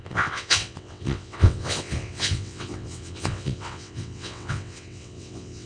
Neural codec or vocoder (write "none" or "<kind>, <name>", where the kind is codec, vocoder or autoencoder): vocoder, WaveNeXt